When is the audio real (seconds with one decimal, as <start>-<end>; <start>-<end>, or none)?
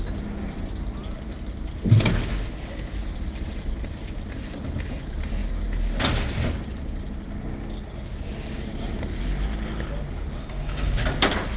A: 0.0-10.4; 11.0-11.6